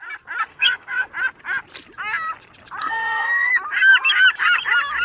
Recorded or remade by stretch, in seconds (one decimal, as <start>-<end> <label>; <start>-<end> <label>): 0.0-0.5 recorded; 0.5-1.1 remade; 1.1-2.8 recorded; 2.8-3.5 remade; 3.5-5.0 recorded